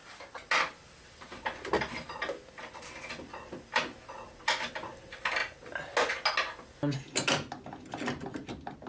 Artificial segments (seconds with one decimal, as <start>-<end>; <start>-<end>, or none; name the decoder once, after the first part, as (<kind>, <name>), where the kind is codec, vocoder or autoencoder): none